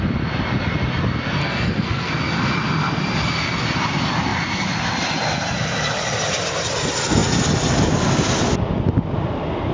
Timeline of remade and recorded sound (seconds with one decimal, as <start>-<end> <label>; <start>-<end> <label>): 0.0-1.4 recorded; 1.4-2.1 remade; 2.1-9.7 recorded